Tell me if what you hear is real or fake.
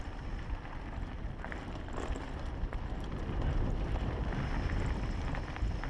real